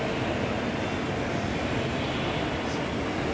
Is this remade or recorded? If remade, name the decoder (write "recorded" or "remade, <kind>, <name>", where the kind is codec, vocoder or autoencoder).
recorded